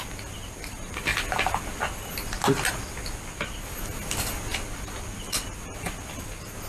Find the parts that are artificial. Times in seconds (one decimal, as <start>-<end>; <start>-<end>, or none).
none